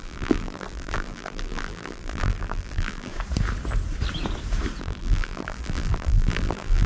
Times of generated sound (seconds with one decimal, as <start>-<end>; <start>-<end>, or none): 0.0-3.1; 4.8-6.9